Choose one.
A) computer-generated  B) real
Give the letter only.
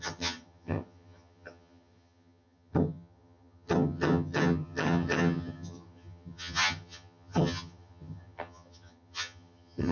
A